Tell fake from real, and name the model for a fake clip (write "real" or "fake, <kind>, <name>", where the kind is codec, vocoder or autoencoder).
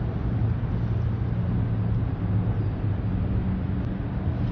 real